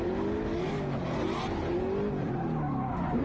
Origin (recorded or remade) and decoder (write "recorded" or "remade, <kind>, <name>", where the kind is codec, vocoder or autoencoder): recorded